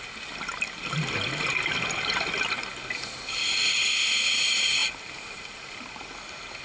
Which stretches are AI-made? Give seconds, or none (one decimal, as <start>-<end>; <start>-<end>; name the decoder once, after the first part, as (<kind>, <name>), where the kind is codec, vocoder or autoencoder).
4.8-6.0 (vocoder, BigVGAN v2)